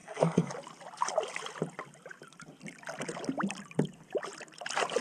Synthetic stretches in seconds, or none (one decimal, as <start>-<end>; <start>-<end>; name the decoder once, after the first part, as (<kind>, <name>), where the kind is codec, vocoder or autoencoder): 0.0-0.5 (codec, SNAC)